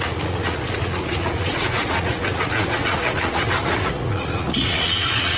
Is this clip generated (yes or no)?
yes